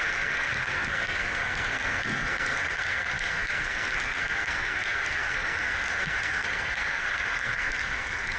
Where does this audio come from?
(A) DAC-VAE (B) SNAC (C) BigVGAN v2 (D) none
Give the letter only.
B